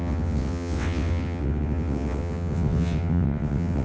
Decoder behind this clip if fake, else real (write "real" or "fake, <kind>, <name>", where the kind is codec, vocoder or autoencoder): fake, vocoder, WaveNeXt